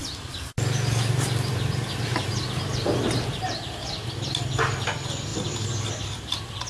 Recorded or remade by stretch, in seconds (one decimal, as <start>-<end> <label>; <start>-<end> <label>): 0.0-4.0 remade; 4.0-6.7 recorded